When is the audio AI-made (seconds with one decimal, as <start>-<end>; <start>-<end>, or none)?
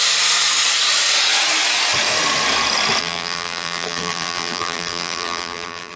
3.0-6.0